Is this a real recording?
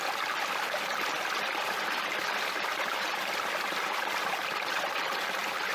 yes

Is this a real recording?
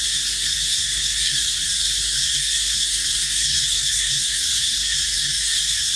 no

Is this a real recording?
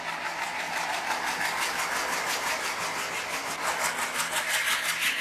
yes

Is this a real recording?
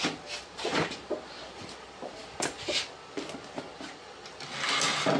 yes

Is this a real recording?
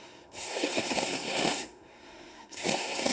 no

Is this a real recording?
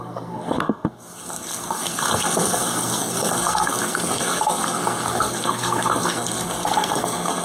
no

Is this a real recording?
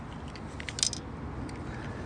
yes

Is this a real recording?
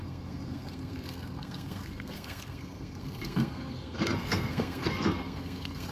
no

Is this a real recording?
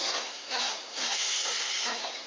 no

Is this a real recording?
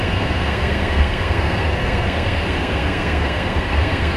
no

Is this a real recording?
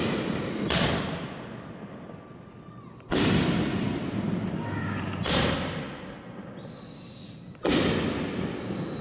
yes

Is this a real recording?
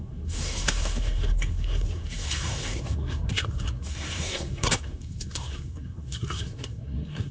no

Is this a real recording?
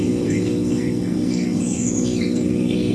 no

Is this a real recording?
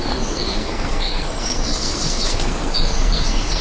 no